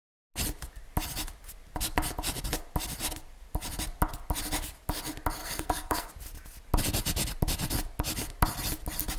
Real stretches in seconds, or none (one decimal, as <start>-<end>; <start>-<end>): 0.0-5.4; 6.1-9.2

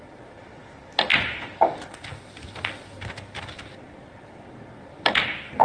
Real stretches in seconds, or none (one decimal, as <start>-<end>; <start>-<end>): 0.0-5.6

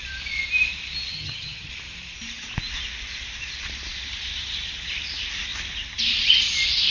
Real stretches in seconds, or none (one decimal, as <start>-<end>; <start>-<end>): 0.0-1.1; 1.7-6.9

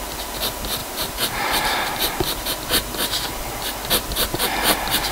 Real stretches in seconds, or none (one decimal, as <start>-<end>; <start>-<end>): 0.0-0.8; 2.4-5.1

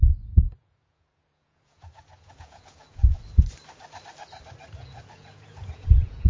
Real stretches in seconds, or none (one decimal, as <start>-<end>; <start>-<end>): 3.0-4.7

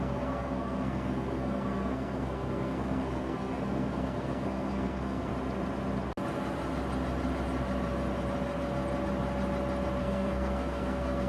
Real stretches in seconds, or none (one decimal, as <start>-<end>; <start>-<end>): 5.3-10.0